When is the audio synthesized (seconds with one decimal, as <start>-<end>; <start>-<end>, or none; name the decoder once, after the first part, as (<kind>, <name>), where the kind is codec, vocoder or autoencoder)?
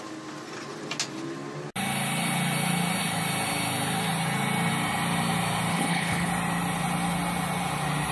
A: 5.7-6.3 (codec, HILCodec)